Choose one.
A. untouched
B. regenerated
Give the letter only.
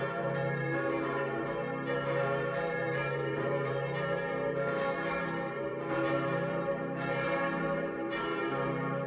B